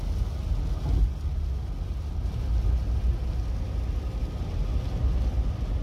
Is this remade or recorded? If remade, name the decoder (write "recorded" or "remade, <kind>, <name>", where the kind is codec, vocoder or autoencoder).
recorded